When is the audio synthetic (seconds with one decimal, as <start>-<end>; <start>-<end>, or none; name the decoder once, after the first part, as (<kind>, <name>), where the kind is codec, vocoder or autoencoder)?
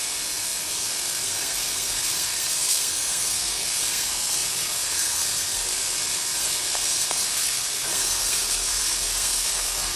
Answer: 0.0-10.0 (codec, SNAC)